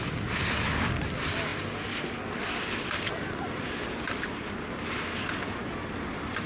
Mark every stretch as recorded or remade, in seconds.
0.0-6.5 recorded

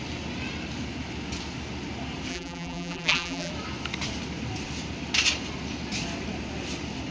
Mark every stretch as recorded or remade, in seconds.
0.0-2.3 recorded; 2.3-3.5 remade; 3.5-7.1 recorded

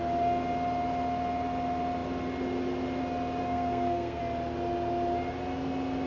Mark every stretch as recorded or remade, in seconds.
0.0-3.4 recorded; 3.4-4.2 remade; 4.2-6.1 recorded

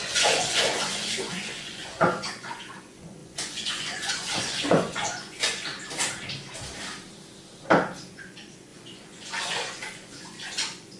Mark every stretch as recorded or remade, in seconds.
0.0-5.7 remade; 5.7-8.1 recorded; 8.1-11.0 remade

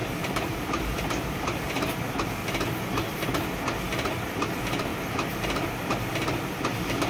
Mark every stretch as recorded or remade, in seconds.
0.0-1.7 remade; 1.7-7.1 recorded

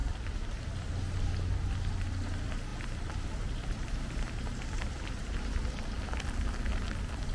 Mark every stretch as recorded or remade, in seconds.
0.0-0.9 remade; 0.9-2.7 recorded; 2.7-6.3 remade; 6.3-7.3 recorded

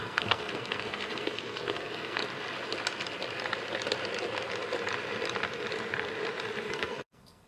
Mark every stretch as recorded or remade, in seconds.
0.0-2.2 remade; 2.2-6.7 recorded; 6.7-7.5 remade

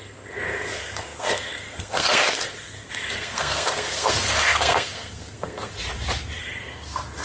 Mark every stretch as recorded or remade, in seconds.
0.0-5.8 remade; 5.8-6.4 recorded; 6.4-7.2 remade